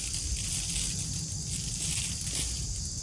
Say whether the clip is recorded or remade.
recorded